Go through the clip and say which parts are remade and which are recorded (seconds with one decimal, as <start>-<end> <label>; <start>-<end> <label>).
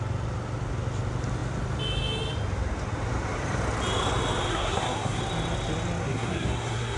0.0-4.5 recorded; 4.5-5.2 remade; 5.2-6.0 recorded; 6.0-7.0 remade